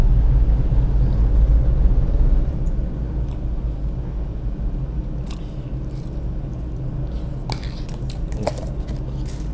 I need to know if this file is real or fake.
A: real